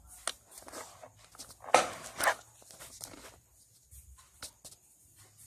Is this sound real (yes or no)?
yes